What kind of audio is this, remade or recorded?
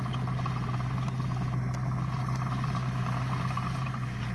recorded